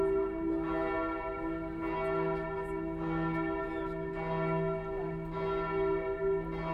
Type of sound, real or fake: real